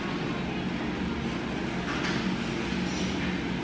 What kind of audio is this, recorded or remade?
recorded